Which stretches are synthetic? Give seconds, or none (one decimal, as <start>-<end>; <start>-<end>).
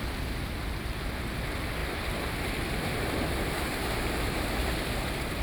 1.8-3.5